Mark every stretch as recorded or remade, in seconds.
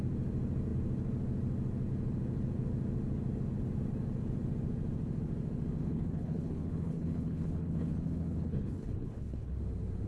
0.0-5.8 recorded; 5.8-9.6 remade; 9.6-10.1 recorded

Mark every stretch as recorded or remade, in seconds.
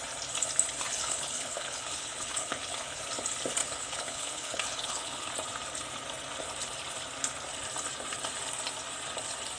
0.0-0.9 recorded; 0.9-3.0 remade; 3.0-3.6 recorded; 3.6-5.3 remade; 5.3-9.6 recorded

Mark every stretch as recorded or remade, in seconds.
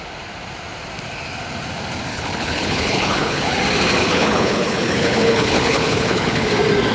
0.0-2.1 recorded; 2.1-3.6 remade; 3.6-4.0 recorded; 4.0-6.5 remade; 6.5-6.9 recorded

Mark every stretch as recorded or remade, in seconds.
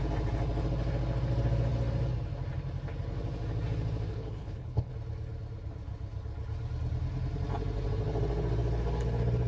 0.0-4.1 recorded; 4.1-4.9 remade; 4.9-9.5 recorded